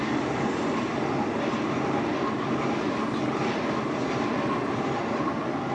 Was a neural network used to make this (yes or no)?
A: no